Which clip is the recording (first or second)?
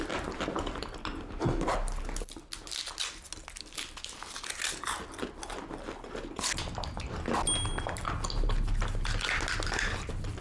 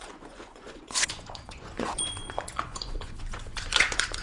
first